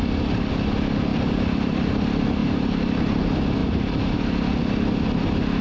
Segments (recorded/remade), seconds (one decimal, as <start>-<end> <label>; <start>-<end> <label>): 0.0-1.1 recorded; 1.1-1.7 remade; 1.7-2.4 recorded; 2.4-3.2 remade; 3.2-3.6 recorded; 3.6-4.2 remade; 4.2-5.6 recorded